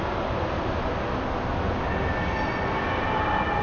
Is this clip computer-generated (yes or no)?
no